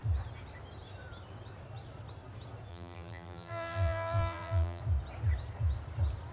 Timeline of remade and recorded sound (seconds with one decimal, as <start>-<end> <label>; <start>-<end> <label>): 0.0-2.7 recorded; 2.7-4.8 remade; 4.8-6.3 recorded